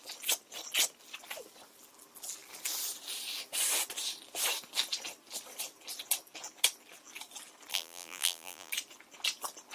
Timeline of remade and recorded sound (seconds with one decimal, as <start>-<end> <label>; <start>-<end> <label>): 0.0-7.7 recorded; 7.7-8.7 remade; 8.7-9.7 recorded